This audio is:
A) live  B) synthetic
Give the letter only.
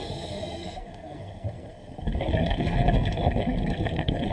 B